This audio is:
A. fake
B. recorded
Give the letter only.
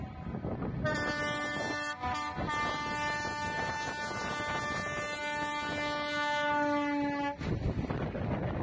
B